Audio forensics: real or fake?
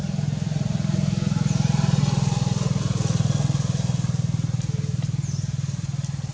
real